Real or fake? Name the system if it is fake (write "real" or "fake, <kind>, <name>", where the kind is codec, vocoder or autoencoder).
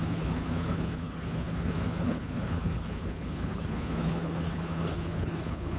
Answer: fake, codec, HILCodec